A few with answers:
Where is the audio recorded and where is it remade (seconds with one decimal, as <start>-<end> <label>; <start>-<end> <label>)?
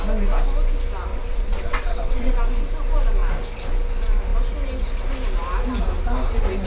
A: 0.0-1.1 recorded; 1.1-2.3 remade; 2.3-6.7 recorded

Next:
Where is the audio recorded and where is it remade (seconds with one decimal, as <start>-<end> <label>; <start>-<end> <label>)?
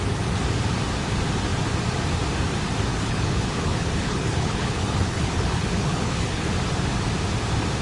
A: 0.0-2.9 recorded; 2.9-6.5 remade; 6.5-7.8 recorded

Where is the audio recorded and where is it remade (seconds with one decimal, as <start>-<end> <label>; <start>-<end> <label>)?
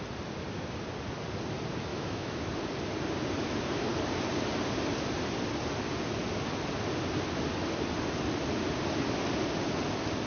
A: 0.0-1.9 recorded; 1.9-2.5 remade; 2.5-10.3 recorded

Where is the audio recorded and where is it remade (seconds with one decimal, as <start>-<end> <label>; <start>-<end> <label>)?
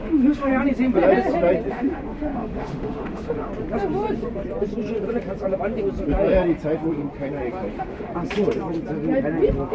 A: 0.0-0.5 remade; 0.5-1.7 recorded; 1.7-3.5 remade; 3.5-7.7 recorded; 7.7-8.1 remade; 8.1-9.7 recorded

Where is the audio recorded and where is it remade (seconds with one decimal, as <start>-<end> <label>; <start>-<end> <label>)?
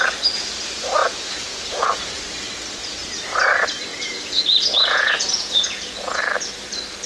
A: 0.0-1.0 recorded; 1.0-2.2 remade; 2.2-3.9 recorded; 3.9-6.2 remade; 6.2-7.1 recorded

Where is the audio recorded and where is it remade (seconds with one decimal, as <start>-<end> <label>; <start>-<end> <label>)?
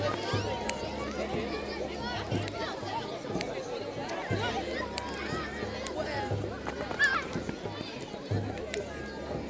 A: 0.0-9.5 recorded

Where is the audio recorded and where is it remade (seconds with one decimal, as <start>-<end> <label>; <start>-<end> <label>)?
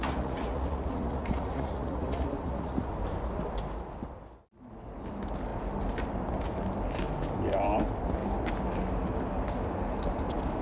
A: 0.0-2.9 remade; 2.9-10.6 recorded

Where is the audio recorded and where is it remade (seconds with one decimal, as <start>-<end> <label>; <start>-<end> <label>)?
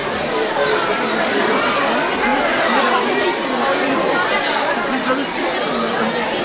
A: 0.0-6.4 recorded